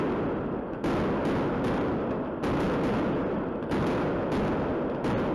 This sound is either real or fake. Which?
real